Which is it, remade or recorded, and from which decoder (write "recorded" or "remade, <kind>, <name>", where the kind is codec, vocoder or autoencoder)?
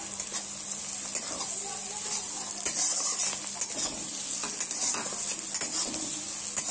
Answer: recorded